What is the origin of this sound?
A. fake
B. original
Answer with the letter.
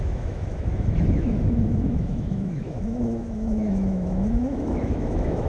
A